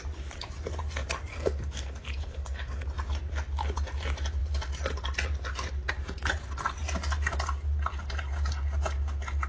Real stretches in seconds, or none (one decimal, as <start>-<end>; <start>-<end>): 0.0-1.3; 2.8-9.5